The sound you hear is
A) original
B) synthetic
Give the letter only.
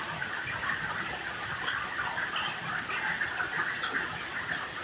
A